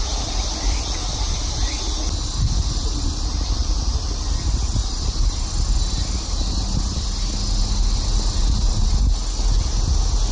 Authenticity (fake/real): real